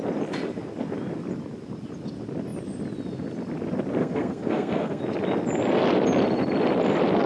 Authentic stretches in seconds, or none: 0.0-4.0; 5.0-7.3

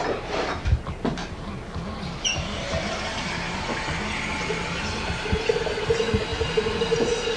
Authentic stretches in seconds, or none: 0.0-7.4

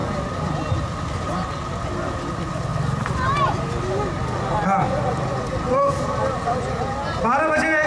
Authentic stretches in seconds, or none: 0.0-7.9

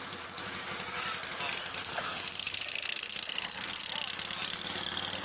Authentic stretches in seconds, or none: 0.0-1.8; 3.8-5.2

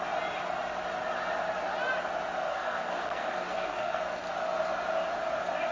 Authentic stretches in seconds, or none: 0.0-2.5; 4.0-5.7

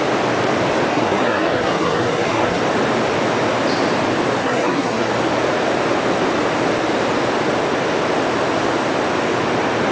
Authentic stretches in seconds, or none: 0.0-0.9; 2.6-4.4; 5.1-9.9

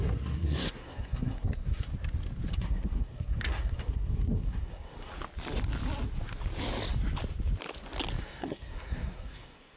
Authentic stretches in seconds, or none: 1.9-2.6; 5.1-8.2

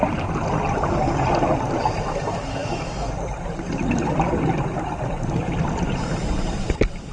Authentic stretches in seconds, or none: 0.0-7.1